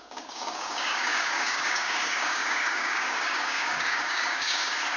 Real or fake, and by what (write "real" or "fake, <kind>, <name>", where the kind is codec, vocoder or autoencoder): fake, codec, DAC